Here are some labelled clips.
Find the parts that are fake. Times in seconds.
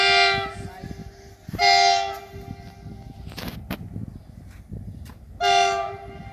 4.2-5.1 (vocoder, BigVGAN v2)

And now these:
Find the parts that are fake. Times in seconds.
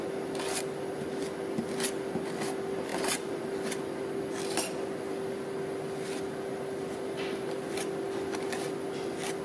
2.9-3.4 (vocoder, BigVGAN v2)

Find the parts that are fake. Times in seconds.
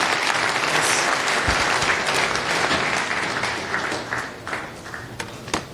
none